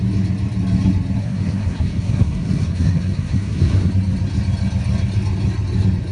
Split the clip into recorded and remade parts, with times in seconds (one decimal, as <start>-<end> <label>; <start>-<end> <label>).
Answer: 0.0-1.2 recorded; 1.2-3.9 remade; 3.9-6.1 recorded